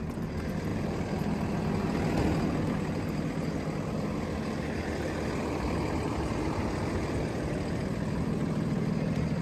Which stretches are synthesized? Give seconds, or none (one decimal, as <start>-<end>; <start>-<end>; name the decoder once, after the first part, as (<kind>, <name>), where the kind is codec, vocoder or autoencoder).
0.7-1.5 (vocoder, BigVGAN v2)